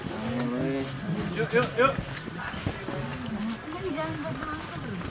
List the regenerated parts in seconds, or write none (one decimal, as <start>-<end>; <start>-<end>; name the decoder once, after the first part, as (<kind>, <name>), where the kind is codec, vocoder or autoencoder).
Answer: none